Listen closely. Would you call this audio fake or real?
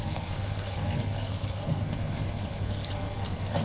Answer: fake